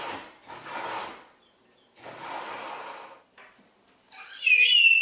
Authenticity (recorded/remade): recorded